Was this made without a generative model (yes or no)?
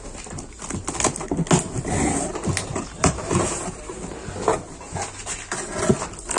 yes